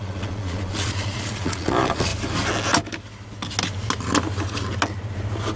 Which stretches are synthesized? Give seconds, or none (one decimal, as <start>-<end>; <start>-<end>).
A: 0.0-2.1